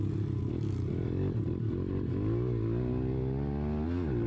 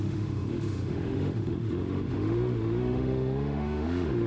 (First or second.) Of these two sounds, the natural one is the first